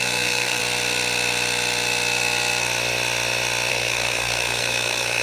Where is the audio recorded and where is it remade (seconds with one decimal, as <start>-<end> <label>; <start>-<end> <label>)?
0.0-0.6 remade; 0.6-3.7 recorded; 3.7-5.2 remade